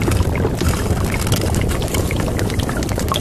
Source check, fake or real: real